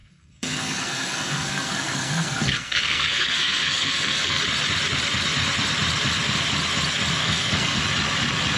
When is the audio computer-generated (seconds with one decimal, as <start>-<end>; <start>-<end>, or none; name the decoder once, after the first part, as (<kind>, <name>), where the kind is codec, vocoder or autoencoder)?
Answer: 0.0-4.4 (codec, SNAC); 7.2-7.8